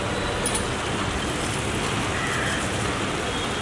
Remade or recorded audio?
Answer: recorded